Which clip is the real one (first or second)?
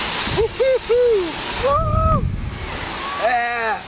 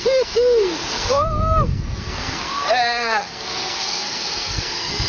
first